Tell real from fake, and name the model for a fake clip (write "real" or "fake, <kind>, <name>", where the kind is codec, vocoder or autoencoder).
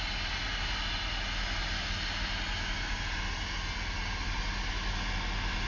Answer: real